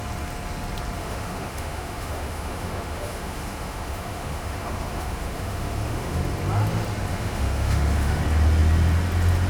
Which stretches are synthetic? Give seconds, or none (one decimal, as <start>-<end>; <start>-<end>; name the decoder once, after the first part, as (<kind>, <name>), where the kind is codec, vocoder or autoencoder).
1.0-6.2 (autoencoder, DAC-VAE); 7.1-8.2